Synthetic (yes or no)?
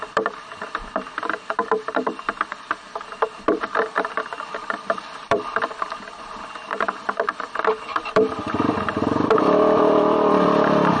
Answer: yes